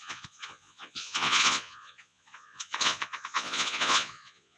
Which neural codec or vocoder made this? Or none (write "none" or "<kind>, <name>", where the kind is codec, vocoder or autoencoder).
vocoder, Vocos